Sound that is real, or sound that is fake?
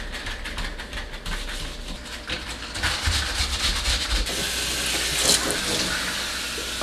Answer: real